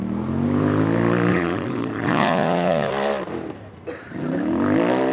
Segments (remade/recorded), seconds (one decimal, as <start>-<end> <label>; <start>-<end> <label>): 0.0-1.3 recorded; 1.3-2.9 remade; 2.9-5.1 recorded